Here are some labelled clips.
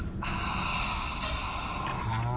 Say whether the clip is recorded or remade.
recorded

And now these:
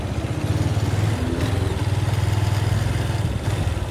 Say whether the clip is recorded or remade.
recorded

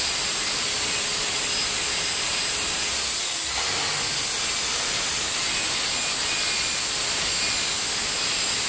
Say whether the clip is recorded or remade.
recorded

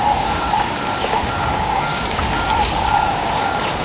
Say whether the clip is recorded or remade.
remade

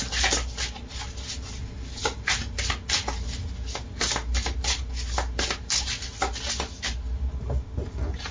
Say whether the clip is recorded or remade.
recorded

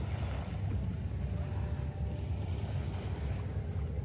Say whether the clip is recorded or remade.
recorded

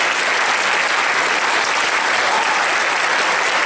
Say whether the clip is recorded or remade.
recorded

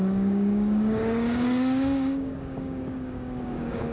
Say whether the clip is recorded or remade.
remade